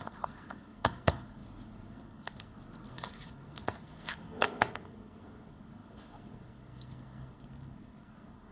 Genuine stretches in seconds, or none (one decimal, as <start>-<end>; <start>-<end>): none